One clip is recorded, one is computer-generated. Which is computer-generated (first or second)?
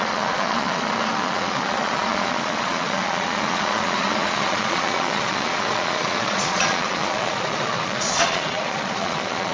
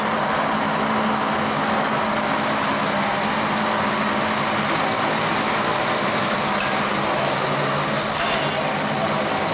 first